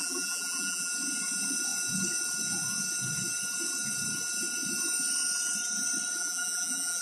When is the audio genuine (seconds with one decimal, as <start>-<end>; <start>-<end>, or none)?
0.9-6.2